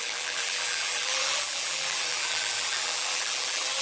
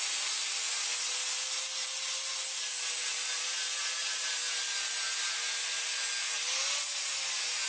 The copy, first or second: first